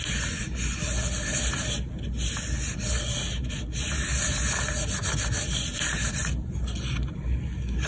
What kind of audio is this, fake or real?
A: real